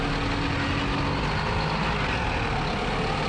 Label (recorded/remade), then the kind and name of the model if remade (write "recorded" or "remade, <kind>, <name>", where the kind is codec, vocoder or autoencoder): recorded